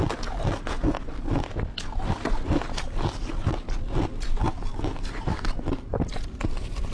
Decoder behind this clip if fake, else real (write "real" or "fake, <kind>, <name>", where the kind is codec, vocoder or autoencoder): real